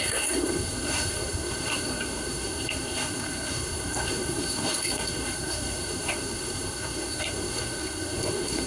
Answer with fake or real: fake